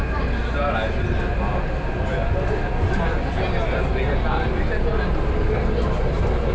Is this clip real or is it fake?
real